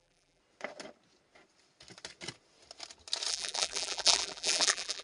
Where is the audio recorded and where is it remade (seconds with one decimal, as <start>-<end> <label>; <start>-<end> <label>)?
0.0-0.4 remade; 0.4-3.3 recorded; 3.3-5.0 remade

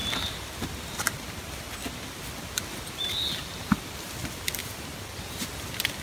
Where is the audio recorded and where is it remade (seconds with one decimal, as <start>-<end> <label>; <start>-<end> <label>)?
0.0-6.0 recorded

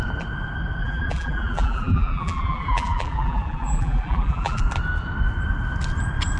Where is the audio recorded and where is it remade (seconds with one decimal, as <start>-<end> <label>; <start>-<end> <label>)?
0.0-0.8 recorded; 0.8-4.6 remade; 4.6-6.4 recorded

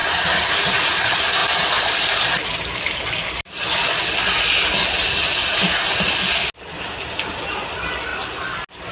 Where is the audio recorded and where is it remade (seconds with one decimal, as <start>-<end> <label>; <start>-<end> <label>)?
0.0-0.5 remade; 0.5-1.4 recorded; 1.4-4.0 remade; 4.0-8.9 recorded

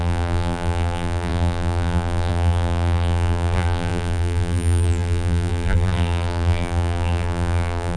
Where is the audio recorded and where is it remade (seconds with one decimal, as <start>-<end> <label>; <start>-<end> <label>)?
0.0-8.0 remade

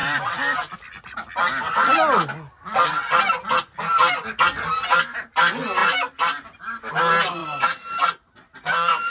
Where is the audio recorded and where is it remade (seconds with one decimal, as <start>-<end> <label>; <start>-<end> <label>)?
0.0-0.6 remade; 0.6-7.4 recorded; 7.4-9.1 remade

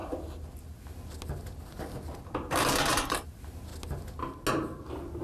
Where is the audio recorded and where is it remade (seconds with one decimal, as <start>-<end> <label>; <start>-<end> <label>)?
0.0-2.5 recorded; 2.5-3.7 remade; 3.7-4.5 recorded; 4.5-5.2 remade

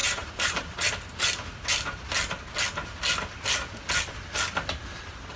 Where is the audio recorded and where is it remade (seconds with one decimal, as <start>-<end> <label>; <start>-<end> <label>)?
0.0-0.9 remade; 0.9-5.4 recorded